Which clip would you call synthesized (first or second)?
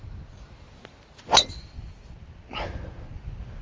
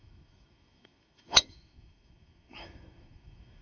second